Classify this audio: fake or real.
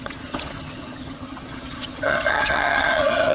fake